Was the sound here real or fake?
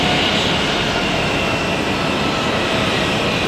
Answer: real